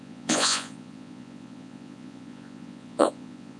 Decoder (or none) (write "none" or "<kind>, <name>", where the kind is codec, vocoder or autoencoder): vocoder, Vocos